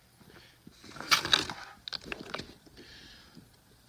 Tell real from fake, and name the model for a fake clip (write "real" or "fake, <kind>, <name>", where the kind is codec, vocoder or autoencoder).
real